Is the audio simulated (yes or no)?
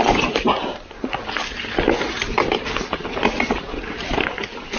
no